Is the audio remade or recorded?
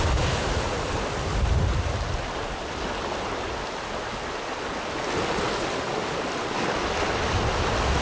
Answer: recorded